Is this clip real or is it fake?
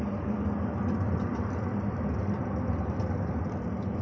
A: fake